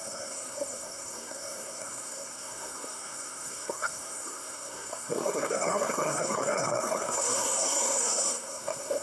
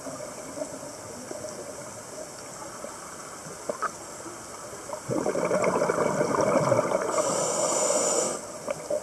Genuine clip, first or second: second